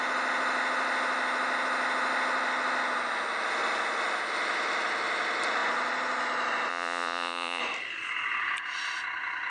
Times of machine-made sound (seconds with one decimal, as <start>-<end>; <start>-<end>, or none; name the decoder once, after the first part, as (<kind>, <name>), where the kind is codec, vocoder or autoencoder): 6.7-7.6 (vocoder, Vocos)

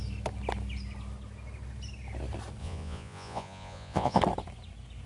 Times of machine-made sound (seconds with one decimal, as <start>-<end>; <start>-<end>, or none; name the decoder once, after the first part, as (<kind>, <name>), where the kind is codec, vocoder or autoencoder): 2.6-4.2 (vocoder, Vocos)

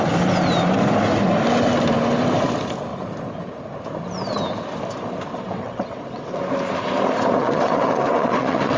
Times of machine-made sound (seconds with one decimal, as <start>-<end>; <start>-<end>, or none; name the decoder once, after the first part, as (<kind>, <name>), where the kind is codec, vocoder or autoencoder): 5.3-6.4 (vocoder, WaveNeXt); 7.4-8.8

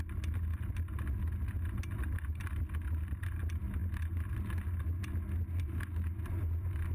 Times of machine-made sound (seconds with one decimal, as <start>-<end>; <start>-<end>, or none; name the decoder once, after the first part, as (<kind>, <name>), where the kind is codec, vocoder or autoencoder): none

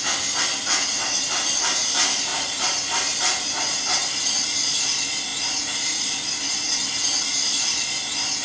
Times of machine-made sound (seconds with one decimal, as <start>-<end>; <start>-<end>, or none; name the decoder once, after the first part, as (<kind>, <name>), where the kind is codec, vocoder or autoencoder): 2.3-3.2 (vocoder, BigVGAN v2)